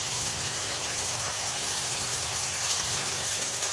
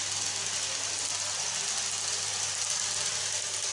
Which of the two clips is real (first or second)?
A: second